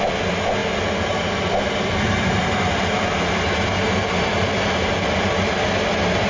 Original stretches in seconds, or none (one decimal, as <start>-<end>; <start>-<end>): 0.0-6.3